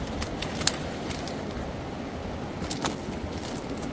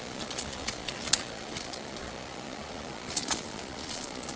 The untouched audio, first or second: first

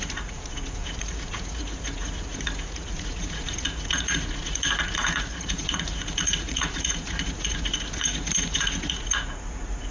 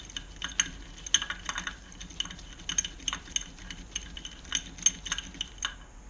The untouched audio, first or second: second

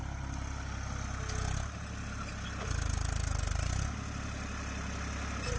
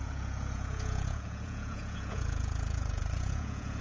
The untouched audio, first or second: first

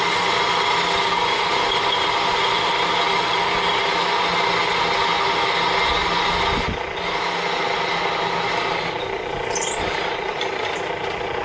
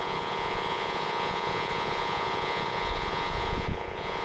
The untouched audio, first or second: first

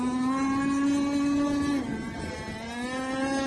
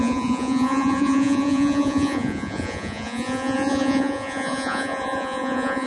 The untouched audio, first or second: first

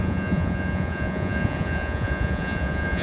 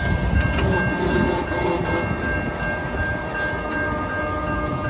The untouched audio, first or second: second